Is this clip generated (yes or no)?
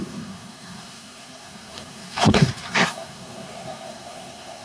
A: yes